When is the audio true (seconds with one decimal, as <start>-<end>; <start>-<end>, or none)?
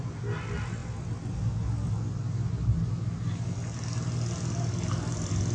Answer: 0.0-5.5